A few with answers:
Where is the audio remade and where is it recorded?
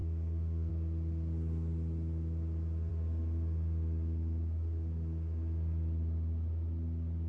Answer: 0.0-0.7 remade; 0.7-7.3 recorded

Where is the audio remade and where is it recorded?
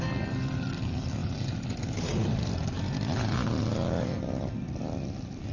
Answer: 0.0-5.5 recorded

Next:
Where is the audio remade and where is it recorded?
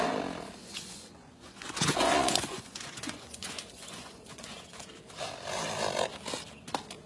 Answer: 0.0-0.6 recorded; 0.6-4.9 remade; 4.9-7.1 recorded